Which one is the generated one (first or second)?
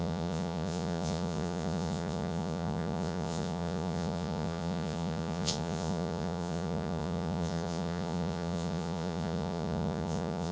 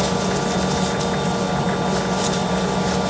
first